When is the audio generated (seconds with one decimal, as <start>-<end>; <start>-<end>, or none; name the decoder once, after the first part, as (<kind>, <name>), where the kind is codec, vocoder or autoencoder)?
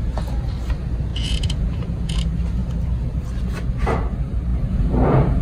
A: 1.1-2.2 (vocoder, Vocos); 4.5-5.4